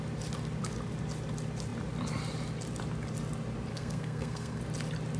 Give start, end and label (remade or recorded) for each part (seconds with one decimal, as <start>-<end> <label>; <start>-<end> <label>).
0.0-3.7 recorded; 3.7-4.6 remade; 4.6-5.2 recorded